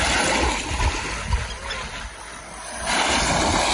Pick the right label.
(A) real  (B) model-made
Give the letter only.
A